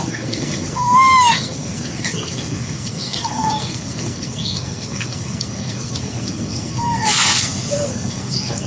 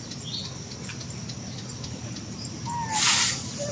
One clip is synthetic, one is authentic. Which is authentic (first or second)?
second